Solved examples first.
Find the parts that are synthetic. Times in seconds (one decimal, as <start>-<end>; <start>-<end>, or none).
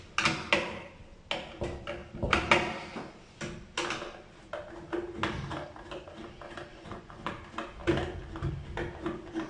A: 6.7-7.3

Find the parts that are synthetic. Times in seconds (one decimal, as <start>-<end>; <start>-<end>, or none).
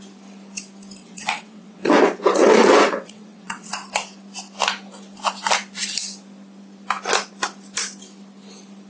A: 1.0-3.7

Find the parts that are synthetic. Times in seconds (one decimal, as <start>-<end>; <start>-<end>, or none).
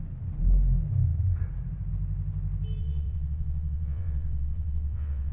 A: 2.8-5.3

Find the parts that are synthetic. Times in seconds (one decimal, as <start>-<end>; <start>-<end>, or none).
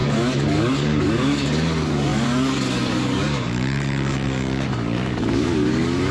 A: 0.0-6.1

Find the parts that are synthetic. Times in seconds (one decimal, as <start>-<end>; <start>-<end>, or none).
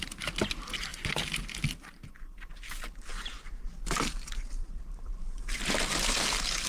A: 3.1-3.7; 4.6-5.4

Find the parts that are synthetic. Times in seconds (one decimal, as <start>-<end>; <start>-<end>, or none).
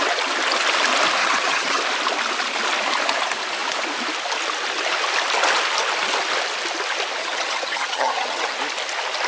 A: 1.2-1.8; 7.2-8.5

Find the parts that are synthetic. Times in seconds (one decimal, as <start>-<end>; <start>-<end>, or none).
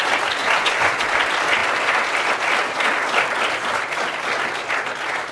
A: 0.4-1.0